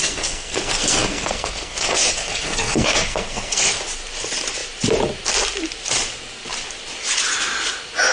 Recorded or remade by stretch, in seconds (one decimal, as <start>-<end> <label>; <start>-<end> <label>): 0.0-3.8 remade; 3.8-8.1 recorded